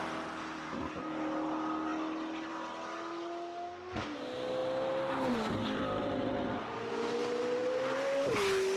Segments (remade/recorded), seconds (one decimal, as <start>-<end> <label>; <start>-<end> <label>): 0.0-8.8 recorded